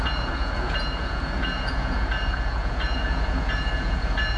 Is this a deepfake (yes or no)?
yes